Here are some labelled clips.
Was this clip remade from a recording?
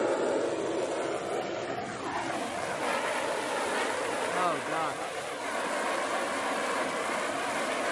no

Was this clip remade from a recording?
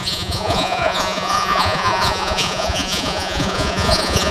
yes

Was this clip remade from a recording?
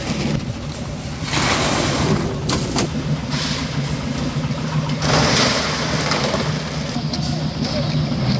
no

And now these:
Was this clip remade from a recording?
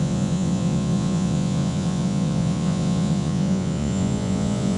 yes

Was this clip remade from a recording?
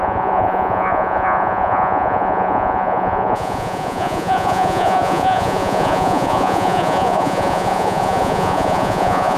yes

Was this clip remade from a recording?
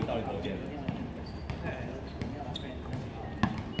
no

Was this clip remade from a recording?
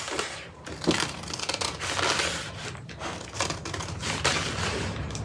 no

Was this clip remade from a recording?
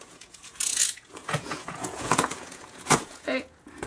yes